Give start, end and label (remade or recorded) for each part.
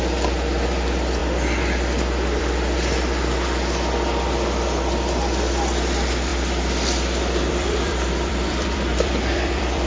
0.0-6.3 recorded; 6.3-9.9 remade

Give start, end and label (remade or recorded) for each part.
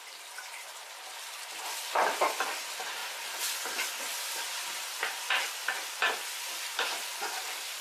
0.0-3.0 remade; 3.0-3.9 recorded; 3.9-7.8 remade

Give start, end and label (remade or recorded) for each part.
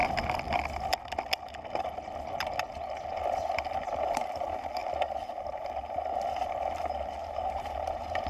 0.0-4.0 recorded; 4.0-4.8 remade; 4.8-7.2 recorded; 7.2-8.3 remade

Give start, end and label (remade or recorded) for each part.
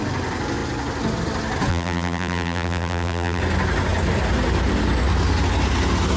0.0-1.7 recorded; 1.7-3.4 remade; 3.4-6.2 recorded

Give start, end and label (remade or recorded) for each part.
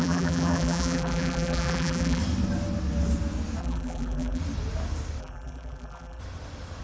0.0-2.2 remade; 2.2-3.6 recorded; 3.6-4.4 remade; 4.4-5.2 recorded; 5.2-6.2 remade; 6.2-6.8 recorded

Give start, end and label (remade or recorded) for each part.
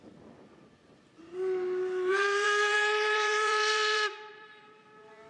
0.0-2.1 recorded; 2.1-5.3 remade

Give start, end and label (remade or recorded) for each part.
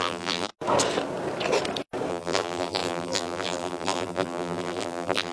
0.0-0.5 remade; 0.5-2.1 recorded; 2.1-5.3 remade